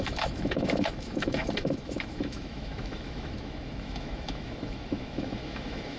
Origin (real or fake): fake